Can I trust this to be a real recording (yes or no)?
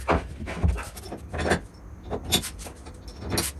yes